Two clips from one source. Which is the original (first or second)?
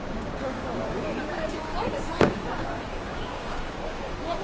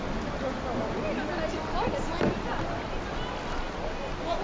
second